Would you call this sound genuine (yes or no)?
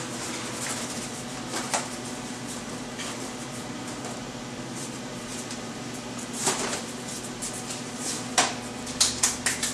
no